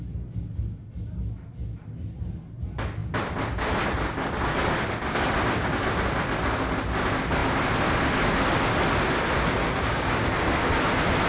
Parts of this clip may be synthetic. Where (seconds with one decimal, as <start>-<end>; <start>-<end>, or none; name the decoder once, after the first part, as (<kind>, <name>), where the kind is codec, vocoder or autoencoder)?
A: 9.6-10.3 (codec, DAC)